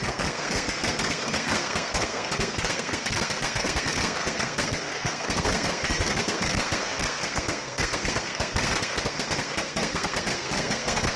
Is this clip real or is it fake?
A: fake